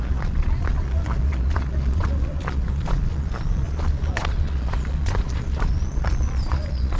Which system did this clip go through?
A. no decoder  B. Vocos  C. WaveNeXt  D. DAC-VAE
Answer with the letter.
B